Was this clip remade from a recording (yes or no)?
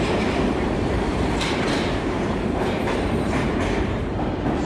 yes